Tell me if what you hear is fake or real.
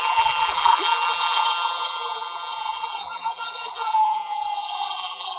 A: fake